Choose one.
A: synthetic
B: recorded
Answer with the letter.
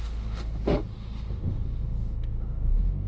A